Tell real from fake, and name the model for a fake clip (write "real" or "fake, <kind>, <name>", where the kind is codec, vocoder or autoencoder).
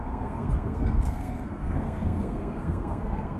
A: fake, codec, SNAC